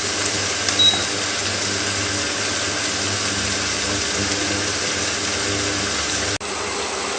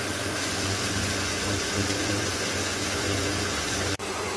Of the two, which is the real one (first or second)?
first